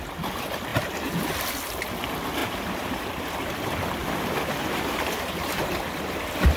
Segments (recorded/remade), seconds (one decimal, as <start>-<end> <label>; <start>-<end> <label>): 0.0-2.4 recorded; 2.4-3.2 remade; 3.2-4.0 recorded; 4.0-5.7 remade; 5.7-6.6 recorded